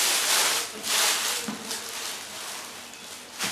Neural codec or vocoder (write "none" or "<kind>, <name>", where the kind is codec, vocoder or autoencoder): none